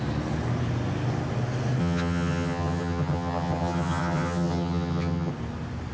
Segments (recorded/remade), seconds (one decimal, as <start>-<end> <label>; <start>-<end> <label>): 0.0-1.8 recorded; 1.8-5.3 remade; 5.3-5.9 recorded

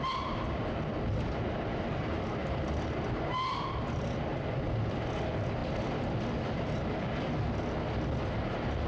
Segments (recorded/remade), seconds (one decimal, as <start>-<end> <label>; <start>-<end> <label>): 0.0-8.9 recorded